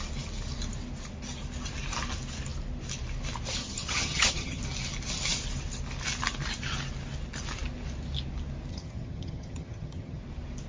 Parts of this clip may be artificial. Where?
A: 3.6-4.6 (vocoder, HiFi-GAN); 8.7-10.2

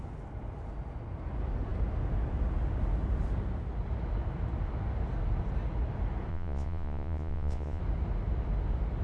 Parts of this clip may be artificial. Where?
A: 6.3-7.8 (vocoder, Vocos)